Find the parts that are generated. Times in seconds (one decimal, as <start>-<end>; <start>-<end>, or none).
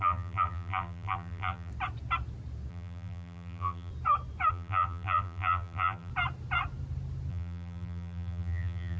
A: 0.0-1.7; 2.7-3.9; 4.5-6.1; 7.3-9.0